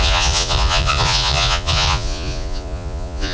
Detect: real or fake fake